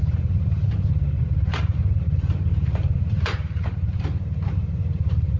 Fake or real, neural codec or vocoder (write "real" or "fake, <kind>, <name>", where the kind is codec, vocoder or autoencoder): fake, vocoder, BigVGAN v2